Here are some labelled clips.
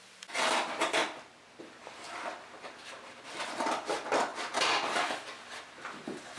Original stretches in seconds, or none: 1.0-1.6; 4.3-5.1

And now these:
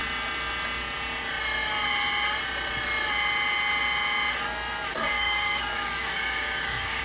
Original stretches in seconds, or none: 0.0-4.9

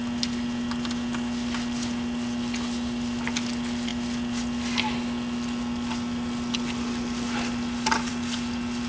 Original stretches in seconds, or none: 0.0-8.9